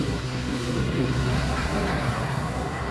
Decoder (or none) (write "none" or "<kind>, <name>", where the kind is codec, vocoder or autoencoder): codec, SNAC